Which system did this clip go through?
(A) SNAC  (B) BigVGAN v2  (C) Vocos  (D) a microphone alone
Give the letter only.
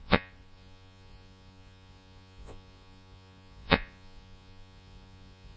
C